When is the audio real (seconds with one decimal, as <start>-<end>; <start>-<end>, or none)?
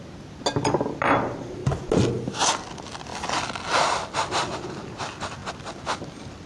0.0-6.5